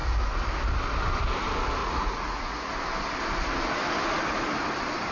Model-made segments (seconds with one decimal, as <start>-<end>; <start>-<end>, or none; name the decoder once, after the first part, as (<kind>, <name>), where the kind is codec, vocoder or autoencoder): 1.8-2.7 (vocoder, Vocos)